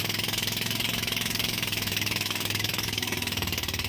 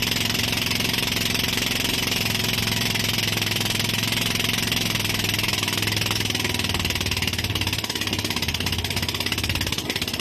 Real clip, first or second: second